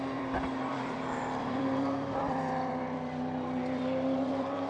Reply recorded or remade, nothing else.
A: remade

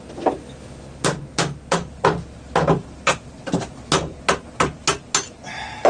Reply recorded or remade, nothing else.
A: recorded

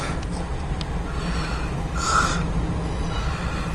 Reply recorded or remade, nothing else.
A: recorded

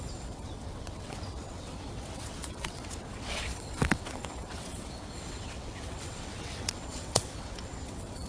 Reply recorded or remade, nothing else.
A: remade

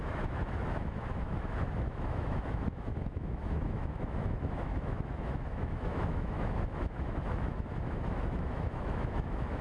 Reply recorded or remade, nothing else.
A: remade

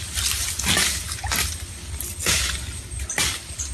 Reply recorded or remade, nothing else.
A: recorded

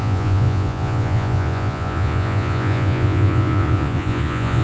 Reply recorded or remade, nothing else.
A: remade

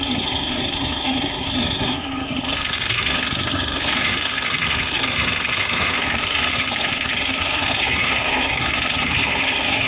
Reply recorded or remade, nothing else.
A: remade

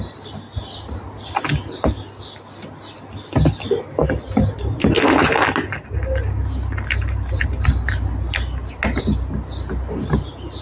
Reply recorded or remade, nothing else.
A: recorded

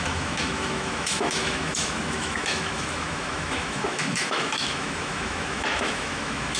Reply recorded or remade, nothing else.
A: remade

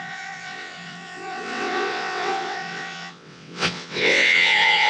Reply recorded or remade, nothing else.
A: remade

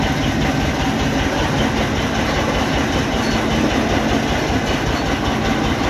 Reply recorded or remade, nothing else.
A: recorded